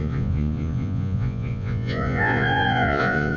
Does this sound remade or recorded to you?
remade